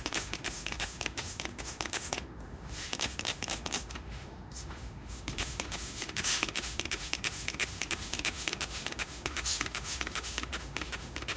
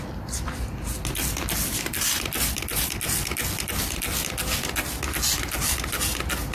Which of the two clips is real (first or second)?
second